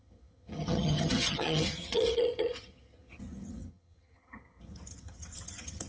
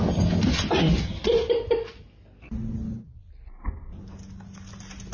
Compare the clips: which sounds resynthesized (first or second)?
first